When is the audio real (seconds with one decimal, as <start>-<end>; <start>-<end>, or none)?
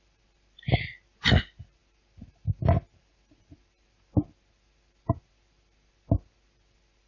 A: 0.0-7.1